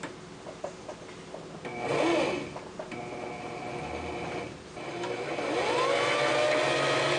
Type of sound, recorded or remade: recorded